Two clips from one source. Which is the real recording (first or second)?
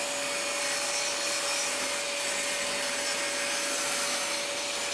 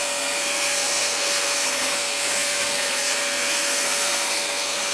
first